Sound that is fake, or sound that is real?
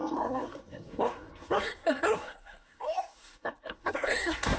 fake